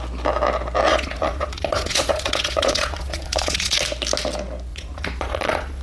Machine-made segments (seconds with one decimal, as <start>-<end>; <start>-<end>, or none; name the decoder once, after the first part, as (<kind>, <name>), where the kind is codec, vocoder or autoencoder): 0.9-3.8 (vocoder, Vocos); 4.7-5.8

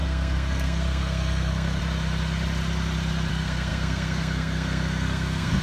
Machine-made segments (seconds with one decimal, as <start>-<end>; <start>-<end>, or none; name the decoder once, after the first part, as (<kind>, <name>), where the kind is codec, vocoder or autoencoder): 0.0-1.8 (codec, SNAC); 3.3-5.6

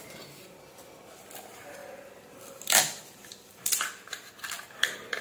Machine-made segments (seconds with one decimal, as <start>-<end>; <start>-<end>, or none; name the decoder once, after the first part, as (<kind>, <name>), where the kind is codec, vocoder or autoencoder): 1.8-5.2 (vocoder, BigVGAN v2)

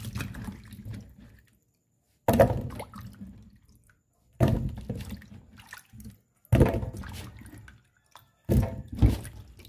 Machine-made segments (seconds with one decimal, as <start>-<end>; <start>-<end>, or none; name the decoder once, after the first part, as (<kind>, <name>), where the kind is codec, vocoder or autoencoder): 0.9-1.4 (vocoder, BigVGAN v2)